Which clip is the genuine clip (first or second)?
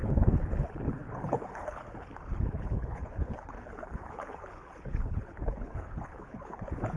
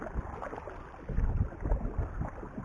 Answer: second